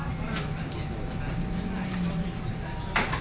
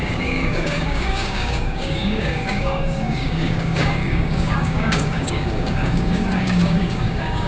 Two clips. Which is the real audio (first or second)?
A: first